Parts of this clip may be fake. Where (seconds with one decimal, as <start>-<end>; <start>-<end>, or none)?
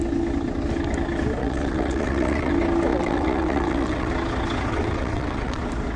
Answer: 1.4-2.5; 2.9-4.1; 4.7-5.6